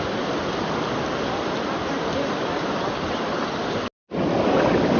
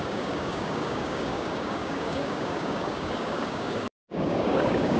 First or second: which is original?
first